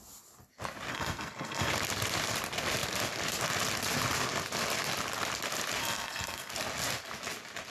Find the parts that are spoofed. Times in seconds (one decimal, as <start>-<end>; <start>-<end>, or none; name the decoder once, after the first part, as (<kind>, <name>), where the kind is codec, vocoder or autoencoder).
0.9-1.7 (codec, SNAC); 5.8-6.5